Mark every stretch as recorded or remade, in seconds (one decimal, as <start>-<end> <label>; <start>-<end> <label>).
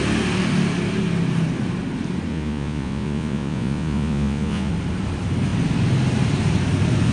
0.0-2.3 recorded; 2.3-4.7 remade; 4.7-7.1 recorded